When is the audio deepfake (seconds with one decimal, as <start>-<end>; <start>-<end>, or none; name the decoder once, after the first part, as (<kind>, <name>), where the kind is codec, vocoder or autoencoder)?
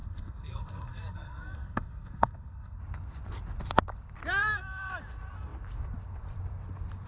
0.0-2.8 (codec, SNAC); 4.4-4.9